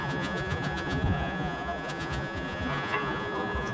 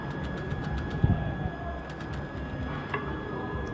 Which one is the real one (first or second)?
second